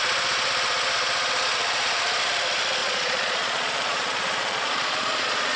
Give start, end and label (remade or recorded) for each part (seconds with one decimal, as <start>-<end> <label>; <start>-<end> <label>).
0.0-2.8 recorded; 2.8-5.6 remade